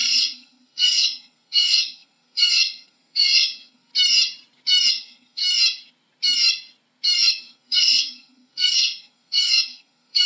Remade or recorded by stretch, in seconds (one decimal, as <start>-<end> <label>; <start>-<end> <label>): 0.0-3.9 remade; 3.9-4.9 recorded; 4.9-5.4 remade; 5.4-7.3 recorded; 7.3-10.3 remade